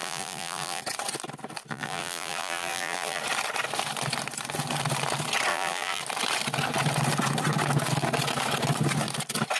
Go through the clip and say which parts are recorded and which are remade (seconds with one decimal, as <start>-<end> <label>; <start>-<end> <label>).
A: 0.0-0.8 remade; 0.8-1.7 recorded; 1.7-3.2 remade; 3.2-5.5 recorded; 5.5-6.0 remade; 6.0-9.6 recorded